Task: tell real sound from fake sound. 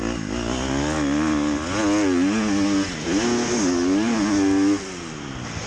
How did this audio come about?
real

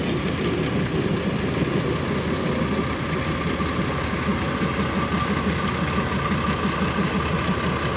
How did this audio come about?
real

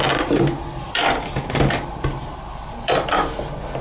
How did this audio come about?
real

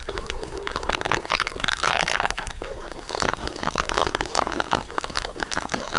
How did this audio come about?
fake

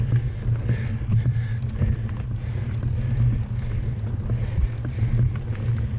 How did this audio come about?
real